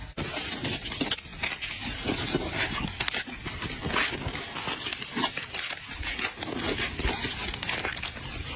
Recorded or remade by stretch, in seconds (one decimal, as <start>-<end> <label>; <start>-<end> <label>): 0.0-8.6 recorded